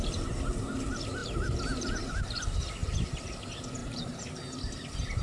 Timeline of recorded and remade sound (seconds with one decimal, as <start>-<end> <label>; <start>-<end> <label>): 0.0-1.2 recorded; 1.2-2.4 remade; 2.4-2.8 recorded; 2.8-3.3 remade; 3.3-3.8 recorded; 3.8-4.4 remade; 4.4-5.2 recorded